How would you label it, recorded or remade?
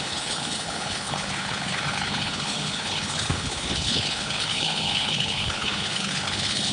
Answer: remade